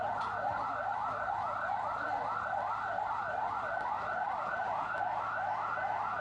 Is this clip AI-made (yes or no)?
no